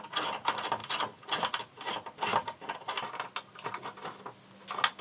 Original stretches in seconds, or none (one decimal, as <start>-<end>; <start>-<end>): 0.0-5.0